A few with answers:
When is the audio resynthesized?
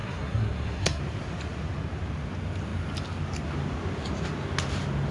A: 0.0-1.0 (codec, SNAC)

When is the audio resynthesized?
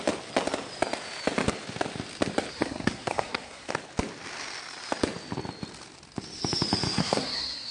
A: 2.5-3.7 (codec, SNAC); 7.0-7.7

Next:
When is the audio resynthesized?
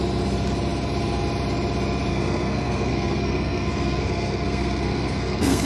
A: 2.1-5.7 (codec, SNAC)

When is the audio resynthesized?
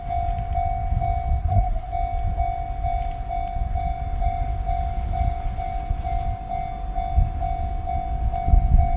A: 1.4-1.9 (codec, SNAC)